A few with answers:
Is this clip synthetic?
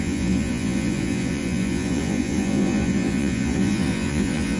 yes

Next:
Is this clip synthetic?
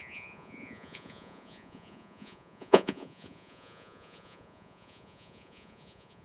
yes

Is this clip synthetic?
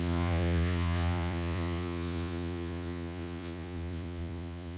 yes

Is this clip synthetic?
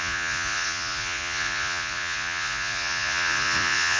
yes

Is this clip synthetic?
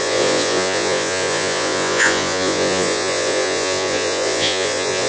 yes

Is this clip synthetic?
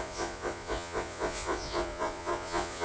yes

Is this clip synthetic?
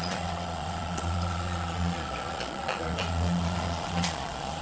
yes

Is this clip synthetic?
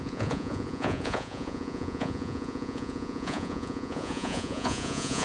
yes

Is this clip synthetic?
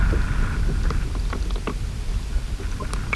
no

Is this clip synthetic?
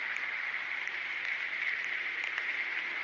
no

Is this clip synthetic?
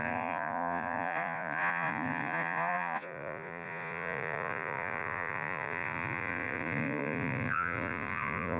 yes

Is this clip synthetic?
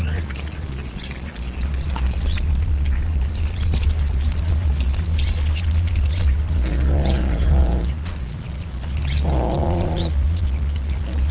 yes